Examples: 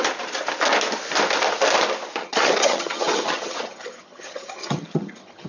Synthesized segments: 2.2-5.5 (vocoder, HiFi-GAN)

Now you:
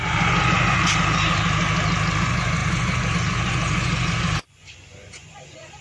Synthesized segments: 0.0-0.8 (vocoder, Vocos); 2.2-5.8

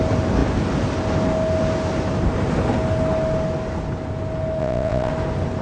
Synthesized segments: 4.6-5.1 (vocoder, Vocos)

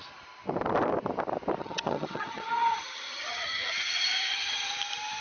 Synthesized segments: 1.6-4.7 (vocoder, HiFi-GAN)

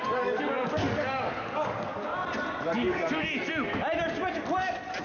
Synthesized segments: 0.0-2.1 (codec, DAC); 2.6-3.5